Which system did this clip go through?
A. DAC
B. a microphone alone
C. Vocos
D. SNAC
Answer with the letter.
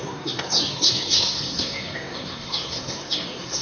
D